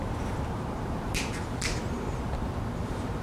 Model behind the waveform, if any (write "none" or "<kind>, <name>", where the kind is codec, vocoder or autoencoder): vocoder, BigVGAN v2